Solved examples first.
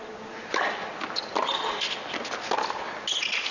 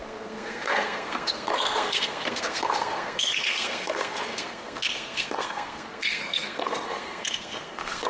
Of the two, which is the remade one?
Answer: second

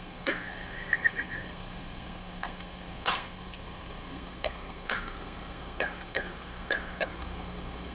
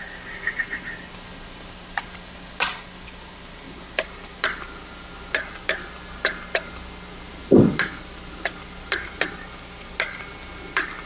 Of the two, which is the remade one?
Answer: first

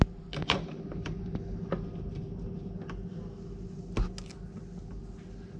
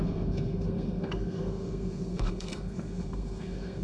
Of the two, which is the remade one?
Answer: second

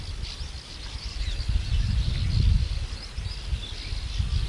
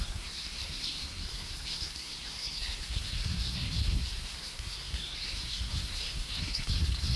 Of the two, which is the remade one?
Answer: second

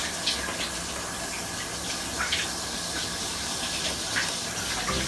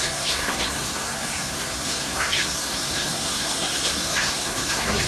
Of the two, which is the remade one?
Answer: second